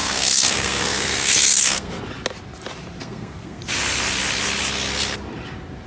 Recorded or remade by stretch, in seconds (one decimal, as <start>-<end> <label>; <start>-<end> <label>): 0.0-2.0 remade; 2.0-3.0 recorded; 3.0-3.6 remade; 3.6-5.9 recorded